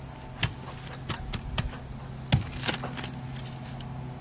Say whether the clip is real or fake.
real